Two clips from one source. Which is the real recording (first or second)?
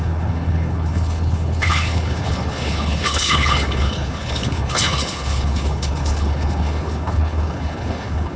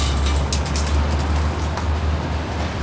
second